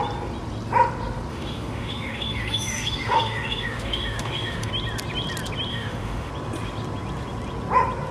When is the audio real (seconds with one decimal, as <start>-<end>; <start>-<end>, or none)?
0.0-1.3; 4.7-5.7; 6.3-8.1